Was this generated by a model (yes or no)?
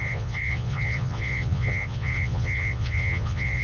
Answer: yes